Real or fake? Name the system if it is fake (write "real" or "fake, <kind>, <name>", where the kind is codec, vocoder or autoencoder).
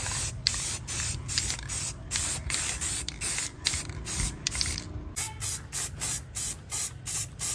real